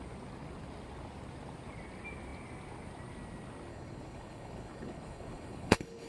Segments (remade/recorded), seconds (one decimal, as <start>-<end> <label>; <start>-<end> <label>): 0.0-3.7 recorded; 3.7-6.1 remade

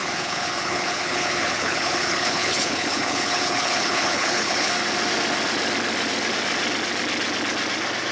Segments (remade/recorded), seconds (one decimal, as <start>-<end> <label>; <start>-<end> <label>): 0.0-4.7 remade; 4.7-8.1 recorded

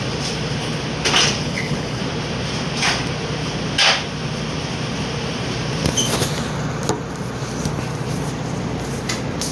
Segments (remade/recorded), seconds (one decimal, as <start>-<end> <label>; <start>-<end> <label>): 0.0-1.4 recorded; 1.4-2.0 remade; 2.0-9.5 recorded

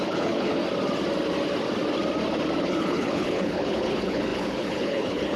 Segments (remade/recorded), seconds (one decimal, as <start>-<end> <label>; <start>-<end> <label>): 0.0-0.6 remade; 0.6-2.6 recorded; 2.6-5.4 remade

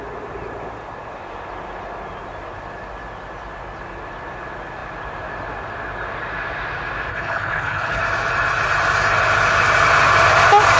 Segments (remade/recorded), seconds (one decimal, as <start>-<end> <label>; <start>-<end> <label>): 0.0-7.1 recorded; 7.1-8.0 remade; 8.0-10.8 recorded

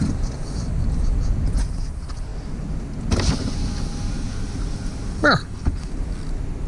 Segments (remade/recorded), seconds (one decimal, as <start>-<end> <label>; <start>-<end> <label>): 0.0-5.4 recorded; 5.4-5.9 remade; 5.9-6.7 recorded

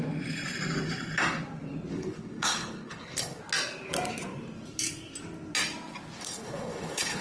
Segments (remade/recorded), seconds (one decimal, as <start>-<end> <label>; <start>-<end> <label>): 0.0-1.9 recorded; 1.9-3.4 remade; 3.4-6.2 recorded; 6.2-7.2 remade